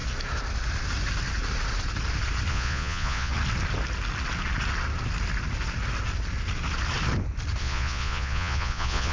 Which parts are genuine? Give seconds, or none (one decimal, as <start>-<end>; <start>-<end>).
0.0-2.5; 3.3-7.6